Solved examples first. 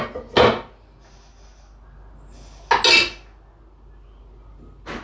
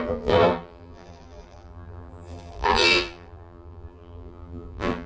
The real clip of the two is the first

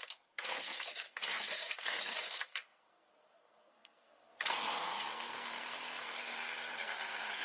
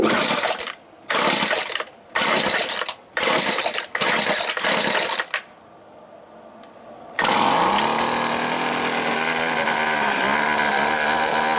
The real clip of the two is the second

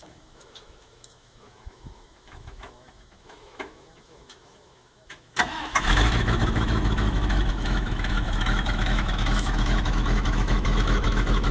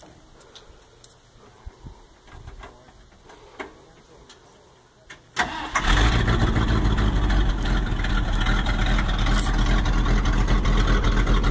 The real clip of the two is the second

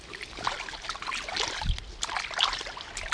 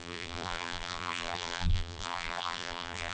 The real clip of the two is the first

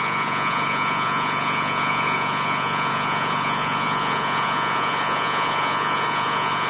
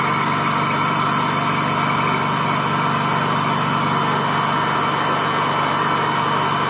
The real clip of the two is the second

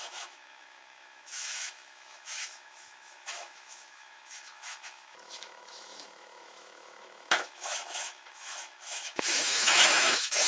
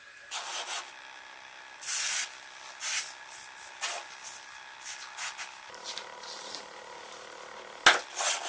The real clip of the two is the second